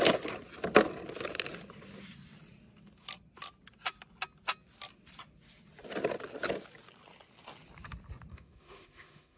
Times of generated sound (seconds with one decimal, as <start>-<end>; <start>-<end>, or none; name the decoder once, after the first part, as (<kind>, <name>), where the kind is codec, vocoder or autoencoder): 8.3-9.4 (autoencoder, DAC-VAE)